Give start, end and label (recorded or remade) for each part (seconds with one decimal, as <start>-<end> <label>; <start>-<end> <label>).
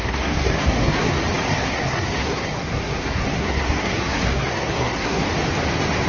0.0-1.1 remade; 1.1-1.5 recorded; 1.5-5.2 remade; 5.2-6.1 recorded